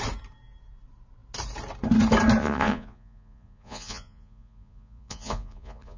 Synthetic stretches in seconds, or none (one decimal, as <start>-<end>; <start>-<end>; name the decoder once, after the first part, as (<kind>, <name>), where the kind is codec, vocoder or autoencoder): 2.4-6.0 (vocoder, Vocos)